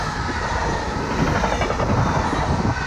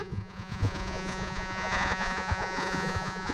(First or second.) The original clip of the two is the first